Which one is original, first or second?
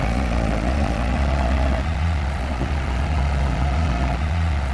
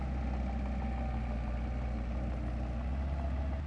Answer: second